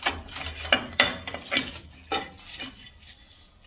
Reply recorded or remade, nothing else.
recorded